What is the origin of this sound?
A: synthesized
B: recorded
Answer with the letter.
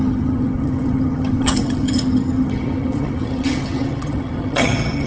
A